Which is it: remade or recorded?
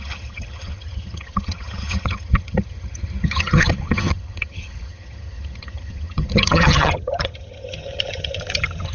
remade